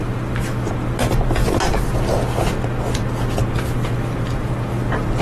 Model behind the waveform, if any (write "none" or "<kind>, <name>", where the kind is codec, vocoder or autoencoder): none